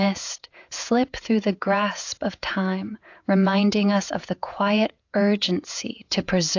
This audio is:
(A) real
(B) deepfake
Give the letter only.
B